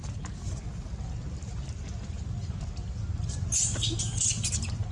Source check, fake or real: real